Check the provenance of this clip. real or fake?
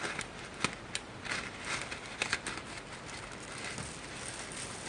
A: real